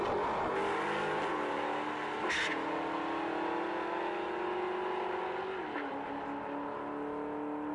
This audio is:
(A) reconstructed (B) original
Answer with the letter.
B